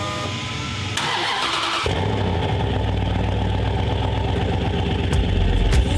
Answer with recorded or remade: recorded